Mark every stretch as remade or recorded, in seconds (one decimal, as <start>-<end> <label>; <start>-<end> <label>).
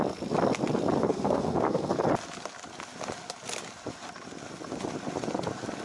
0.0-1.0 recorded; 1.0-1.9 remade; 1.9-5.8 recorded